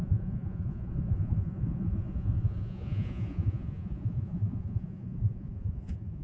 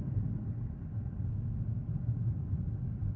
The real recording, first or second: second